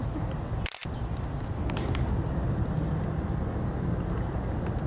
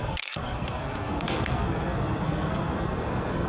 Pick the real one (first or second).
first